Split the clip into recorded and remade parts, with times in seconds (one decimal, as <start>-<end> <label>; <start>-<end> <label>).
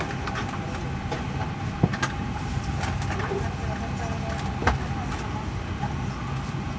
0.0-1.9 recorded; 1.9-2.9 remade; 2.9-6.8 recorded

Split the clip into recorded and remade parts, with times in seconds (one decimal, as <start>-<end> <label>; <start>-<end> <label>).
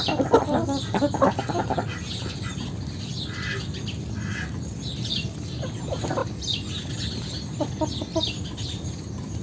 0.0-9.4 recorded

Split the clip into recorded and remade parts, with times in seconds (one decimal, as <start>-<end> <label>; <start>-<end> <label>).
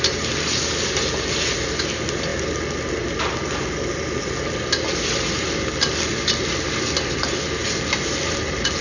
0.0-8.8 recorded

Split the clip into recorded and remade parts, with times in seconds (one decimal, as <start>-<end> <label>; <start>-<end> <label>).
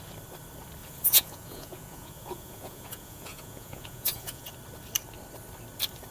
0.0-0.8 recorded; 0.8-4.5 remade; 4.5-6.1 recorded